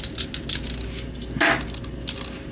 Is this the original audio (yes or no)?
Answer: yes